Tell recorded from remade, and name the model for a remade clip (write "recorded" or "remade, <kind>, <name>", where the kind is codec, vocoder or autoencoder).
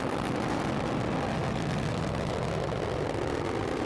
recorded